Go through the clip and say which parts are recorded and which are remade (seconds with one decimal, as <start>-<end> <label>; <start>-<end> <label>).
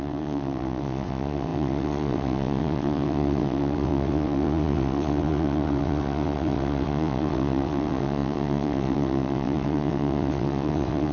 0.0-11.1 remade